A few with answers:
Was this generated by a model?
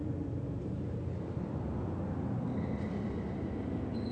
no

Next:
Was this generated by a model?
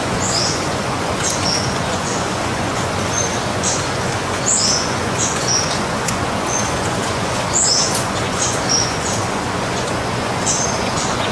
yes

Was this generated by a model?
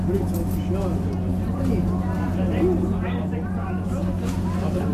no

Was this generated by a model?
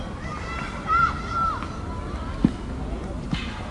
no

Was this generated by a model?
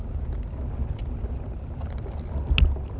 no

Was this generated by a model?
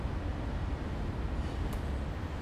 no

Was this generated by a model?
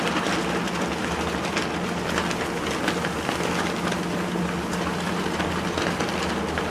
no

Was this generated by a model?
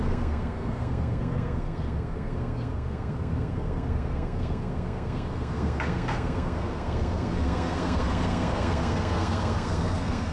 yes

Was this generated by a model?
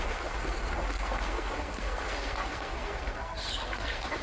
yes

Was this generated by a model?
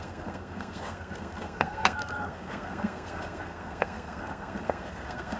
yes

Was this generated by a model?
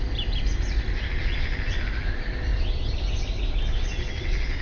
no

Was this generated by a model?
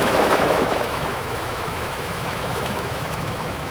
yes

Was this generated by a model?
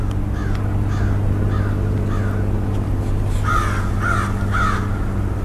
no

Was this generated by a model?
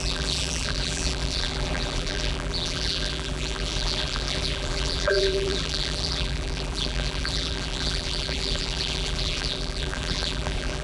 yes